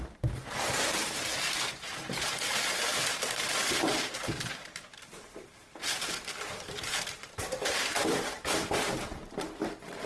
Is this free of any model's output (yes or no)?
no